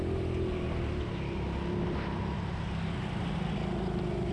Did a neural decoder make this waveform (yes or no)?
no